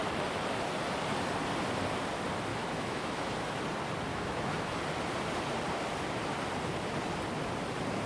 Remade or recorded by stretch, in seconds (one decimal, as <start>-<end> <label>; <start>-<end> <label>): 0.0-2.5 recorded; 2.5-3.6 remade; 3.6-4.1 recorded; 4.1-4.8 remade; 4.8-8.1 recorded